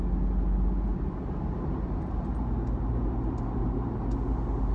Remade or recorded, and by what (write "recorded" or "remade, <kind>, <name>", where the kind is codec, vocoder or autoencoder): recorded